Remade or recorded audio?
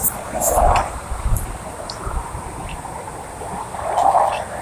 recorded